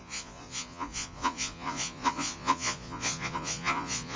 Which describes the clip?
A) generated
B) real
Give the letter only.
A